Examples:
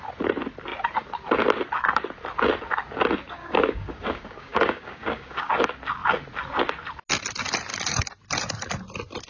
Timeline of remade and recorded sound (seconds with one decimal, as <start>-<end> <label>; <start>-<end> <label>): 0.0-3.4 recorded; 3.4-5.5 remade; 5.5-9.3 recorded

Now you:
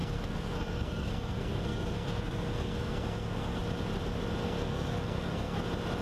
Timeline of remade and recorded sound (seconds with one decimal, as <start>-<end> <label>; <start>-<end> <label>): 0.0-3.6 remade; 3.6-4.4 recorded; 4.4-5.6 remade; 5.6-6.0 recorded

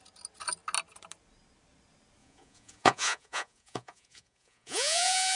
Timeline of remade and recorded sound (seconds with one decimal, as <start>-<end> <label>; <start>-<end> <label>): 0.0-2.2 recorded; 2.2-5.4 remade

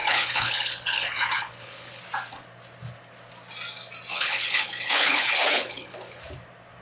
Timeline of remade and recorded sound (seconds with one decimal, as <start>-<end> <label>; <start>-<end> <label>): 0.0-2.0 remade; 2.0-4.1 recorded; 4.1-6.2 remade; 6.2-6.8 recorded

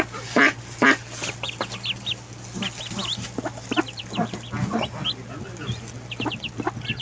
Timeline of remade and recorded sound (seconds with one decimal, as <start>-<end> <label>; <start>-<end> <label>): 0.0-7.0 recorded

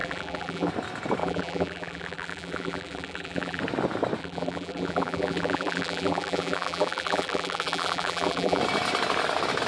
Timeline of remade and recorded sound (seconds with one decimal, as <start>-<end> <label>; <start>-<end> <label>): 0.0-0.7 remade; 0.7-1.2 recorded; 1.2-3.6 remade; 3.6-4.2 recorded; 4.2-8.6 remade; 8.6-9.7 recorded

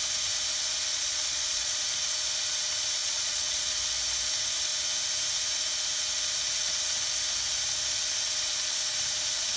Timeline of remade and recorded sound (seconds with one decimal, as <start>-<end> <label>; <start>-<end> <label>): 0.0-0.9 recorded; 0.9-1.7 remade; 1.7-3.0 recorded; 3.0-3.7 remade; 3.7-9.6 recorded